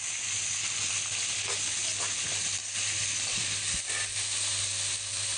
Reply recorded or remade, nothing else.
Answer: recorded